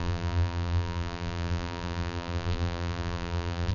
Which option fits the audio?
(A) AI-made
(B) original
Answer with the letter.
A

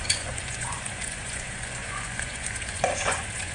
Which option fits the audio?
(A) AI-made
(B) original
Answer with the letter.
A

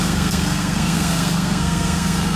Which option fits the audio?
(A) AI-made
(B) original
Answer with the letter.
A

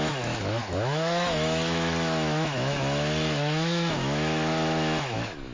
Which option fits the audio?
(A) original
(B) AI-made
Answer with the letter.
B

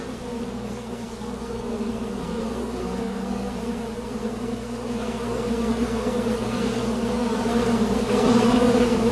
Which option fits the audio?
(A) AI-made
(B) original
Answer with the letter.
A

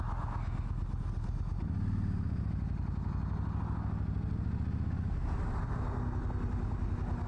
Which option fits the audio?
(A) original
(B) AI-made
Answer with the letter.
A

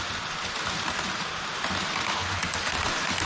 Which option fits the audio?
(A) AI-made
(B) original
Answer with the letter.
B